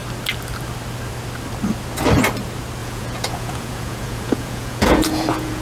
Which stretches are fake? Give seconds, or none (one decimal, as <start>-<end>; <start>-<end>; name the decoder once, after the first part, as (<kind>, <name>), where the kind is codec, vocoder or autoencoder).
2.8-5.6 (vocoder, Vocos)